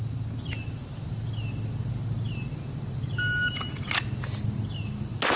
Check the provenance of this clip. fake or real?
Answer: real